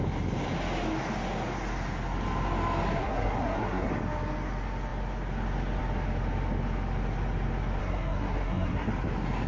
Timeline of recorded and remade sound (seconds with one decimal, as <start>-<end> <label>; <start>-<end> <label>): 0.0-3.0 recorded; 3.0-3.9 remade; 3.9-7.8 recorded; 7.8-8.9 remade; 8.9-9.5 recorded